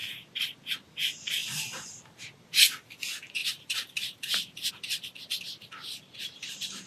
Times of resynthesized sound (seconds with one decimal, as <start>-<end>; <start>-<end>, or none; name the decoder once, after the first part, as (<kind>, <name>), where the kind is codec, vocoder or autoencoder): 3.4-4.7 (vocoder, BigVGAN v2)